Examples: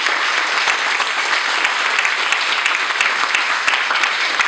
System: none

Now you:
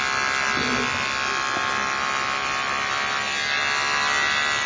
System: none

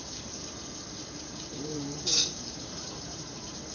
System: vocoder, BigVGAN v2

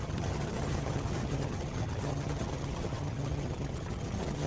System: vocoder, HiFi-GAN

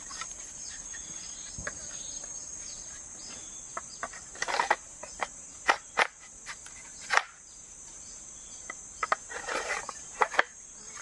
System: vocoder, BigVGAN v2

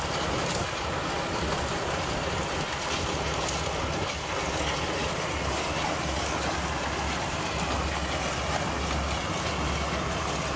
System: none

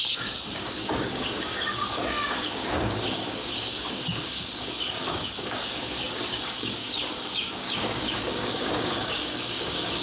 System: codec, DAC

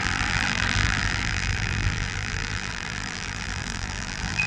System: vocoder, BigVGAN v2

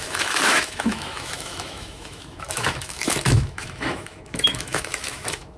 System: autoencoder, DAC-VAE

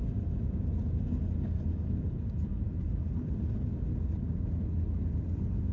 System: none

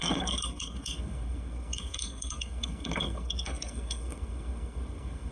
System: codec, SNAC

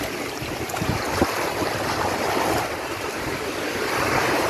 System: none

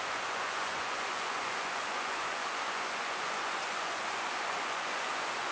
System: vocoder, Vocos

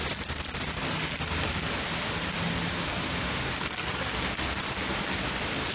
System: none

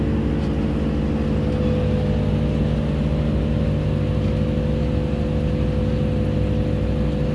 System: none